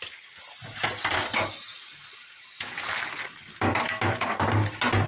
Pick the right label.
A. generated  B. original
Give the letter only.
B